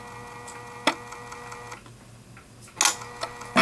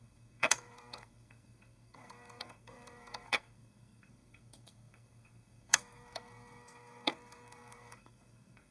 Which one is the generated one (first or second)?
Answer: second